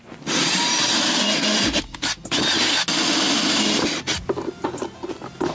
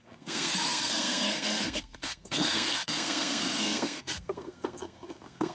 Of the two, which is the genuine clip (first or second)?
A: first